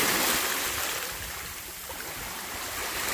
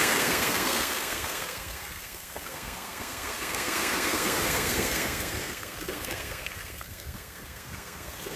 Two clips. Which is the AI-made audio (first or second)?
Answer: second